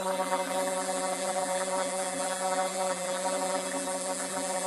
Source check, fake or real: fake